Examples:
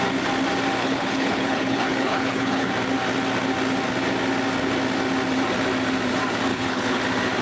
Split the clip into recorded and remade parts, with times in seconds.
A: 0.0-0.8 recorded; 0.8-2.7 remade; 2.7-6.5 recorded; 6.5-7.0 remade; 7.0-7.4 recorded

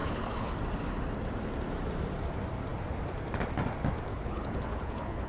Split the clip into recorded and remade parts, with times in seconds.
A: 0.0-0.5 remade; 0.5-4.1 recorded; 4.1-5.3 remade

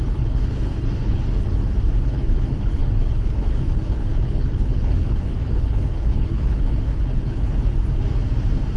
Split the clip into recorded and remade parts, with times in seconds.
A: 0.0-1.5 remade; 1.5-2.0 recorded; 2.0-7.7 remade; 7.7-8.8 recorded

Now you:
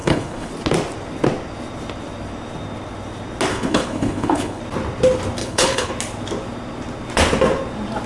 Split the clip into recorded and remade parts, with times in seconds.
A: 0.0-0.5 remade; 0.5-3.5 recorded; 3.5-4.6 remade; 4.6-5.4 recorded; 5.4-5.9 remade; 5.9-8.1 recorded

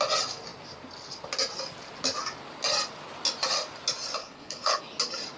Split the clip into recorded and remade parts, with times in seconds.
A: 0.0-4.2 recorded; 4.2-4.8 remade; 4.8-5.4 recorded